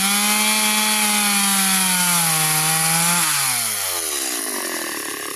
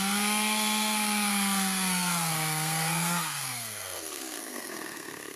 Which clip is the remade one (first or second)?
second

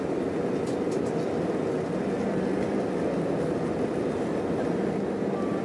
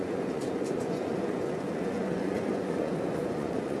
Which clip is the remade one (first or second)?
second